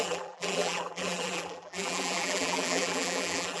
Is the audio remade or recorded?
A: remade